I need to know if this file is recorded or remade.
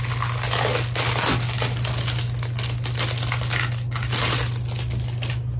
recorded